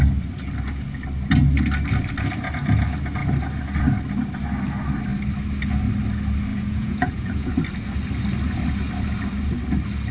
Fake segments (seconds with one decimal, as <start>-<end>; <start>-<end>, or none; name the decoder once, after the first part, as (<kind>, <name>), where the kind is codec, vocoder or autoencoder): 6.5-7.5 (vocoder, Vocos)